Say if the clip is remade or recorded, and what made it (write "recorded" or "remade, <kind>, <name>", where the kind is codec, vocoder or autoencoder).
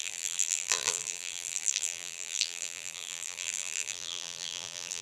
remade, vocoder, BigVGAN v2